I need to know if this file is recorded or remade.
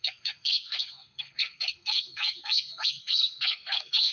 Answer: remade